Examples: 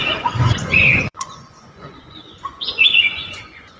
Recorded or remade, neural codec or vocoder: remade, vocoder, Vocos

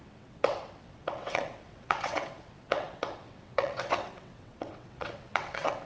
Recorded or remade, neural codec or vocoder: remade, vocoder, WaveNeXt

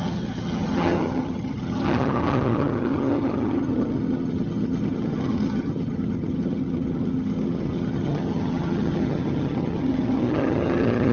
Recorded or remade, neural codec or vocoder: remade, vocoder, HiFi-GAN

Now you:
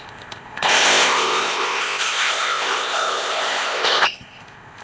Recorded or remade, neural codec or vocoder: remade, codec, ZipCodec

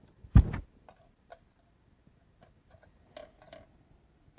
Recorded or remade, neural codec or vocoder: recorded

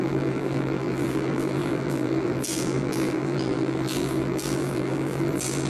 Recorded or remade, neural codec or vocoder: remade, vocoder, BigVGAN v2